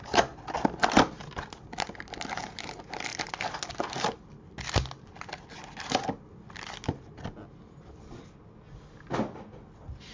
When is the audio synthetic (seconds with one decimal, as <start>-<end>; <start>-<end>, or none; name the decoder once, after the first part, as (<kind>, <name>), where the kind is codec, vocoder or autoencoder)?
none